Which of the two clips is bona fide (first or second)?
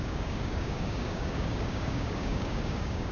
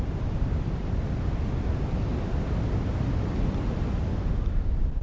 second